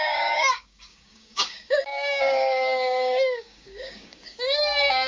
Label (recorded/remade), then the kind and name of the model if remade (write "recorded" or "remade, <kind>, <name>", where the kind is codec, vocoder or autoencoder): remade, codec, DAC